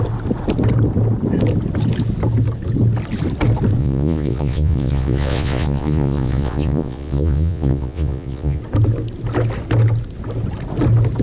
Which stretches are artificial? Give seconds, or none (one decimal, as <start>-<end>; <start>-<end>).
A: 3.8-8.6